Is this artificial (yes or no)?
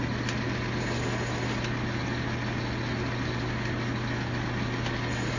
no